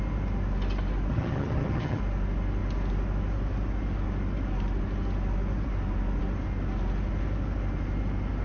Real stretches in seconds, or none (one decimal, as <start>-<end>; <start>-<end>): 0.0-1.1; 2.0-8.4